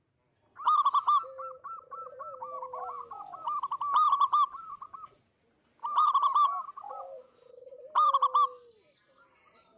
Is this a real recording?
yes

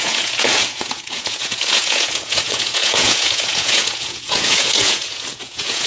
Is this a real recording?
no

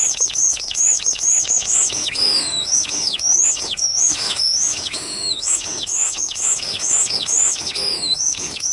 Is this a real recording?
no